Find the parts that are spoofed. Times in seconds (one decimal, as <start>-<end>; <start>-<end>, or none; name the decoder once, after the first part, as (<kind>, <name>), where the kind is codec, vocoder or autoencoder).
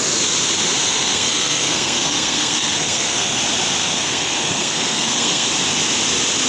0.8-3.4 (codec, SNAC); 3.8-5.5